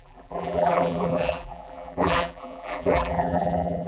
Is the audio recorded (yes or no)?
no